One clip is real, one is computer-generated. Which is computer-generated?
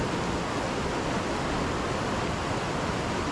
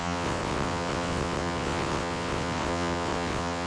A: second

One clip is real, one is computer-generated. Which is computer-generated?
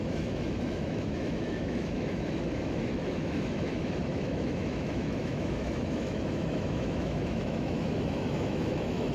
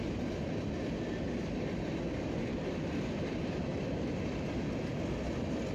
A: first